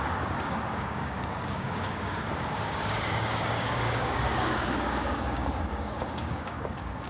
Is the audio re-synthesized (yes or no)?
yes